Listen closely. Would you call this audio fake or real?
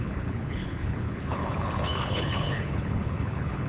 fake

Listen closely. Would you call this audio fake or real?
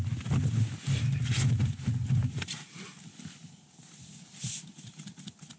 real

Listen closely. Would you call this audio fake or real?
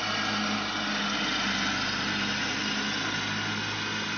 real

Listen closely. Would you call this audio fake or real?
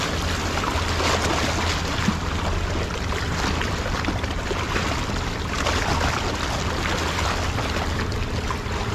real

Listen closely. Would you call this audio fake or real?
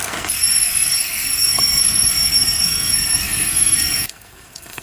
fake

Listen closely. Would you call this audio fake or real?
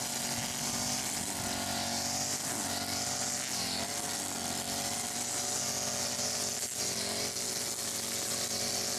real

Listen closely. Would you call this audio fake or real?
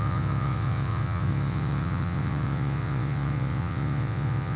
fake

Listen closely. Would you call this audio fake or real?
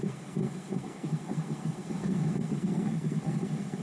fake